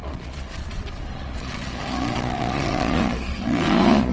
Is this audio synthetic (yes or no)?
yes